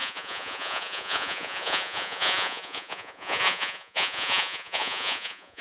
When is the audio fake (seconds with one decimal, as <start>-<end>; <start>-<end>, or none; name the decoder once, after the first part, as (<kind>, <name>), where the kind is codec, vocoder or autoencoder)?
0.0-5.6 (vocoder, Vocos)